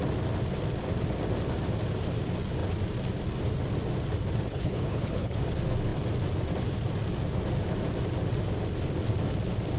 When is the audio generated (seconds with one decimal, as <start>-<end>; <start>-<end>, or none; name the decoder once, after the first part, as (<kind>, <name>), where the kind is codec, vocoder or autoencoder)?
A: 4.5-5.4 (codec, HILCodec)